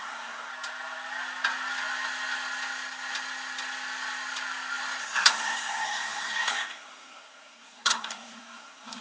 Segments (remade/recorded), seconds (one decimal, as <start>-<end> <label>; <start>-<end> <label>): 0.0-0.5 remade; 0.5-5.0 recorded; 5.0-9.0 remade